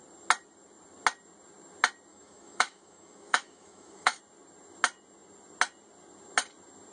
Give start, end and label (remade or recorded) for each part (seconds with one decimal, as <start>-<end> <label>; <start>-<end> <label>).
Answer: 0.0-2.1 recorded; 2.1-4.2 remade; 4.2-6.9 recorded